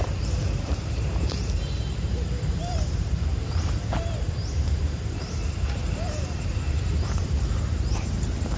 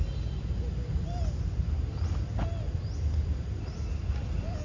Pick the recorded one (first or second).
second